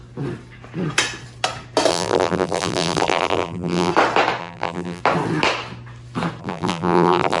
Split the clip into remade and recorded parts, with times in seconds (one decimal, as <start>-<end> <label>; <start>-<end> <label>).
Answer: 0.0-1.9 recorded; 1.9-3.9 remade; 3.9-4.4 recorded; 4.4-5.0 remade; 5.0-6.4 recorded; 6.4-7.4 remade